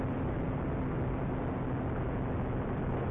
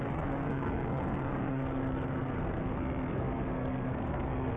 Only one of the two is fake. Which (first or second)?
second